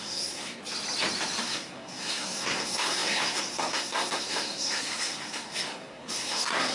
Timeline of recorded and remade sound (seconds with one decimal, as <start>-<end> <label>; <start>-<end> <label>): 0.0-0.6 remade; 0.6-1.4 recorded; 1.4-6.7 remade